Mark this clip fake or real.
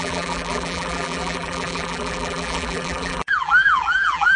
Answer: fake